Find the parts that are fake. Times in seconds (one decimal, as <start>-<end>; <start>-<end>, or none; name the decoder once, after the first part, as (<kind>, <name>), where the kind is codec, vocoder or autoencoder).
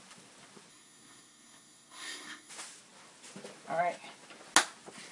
0.7-2.5 (codec, SNAC)